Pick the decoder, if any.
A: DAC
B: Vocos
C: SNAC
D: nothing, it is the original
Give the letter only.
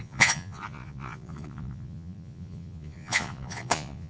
B